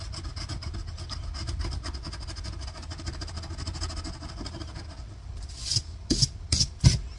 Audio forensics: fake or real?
real